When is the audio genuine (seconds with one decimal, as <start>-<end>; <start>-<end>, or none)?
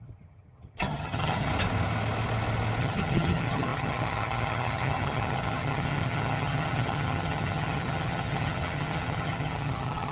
1.5-2.8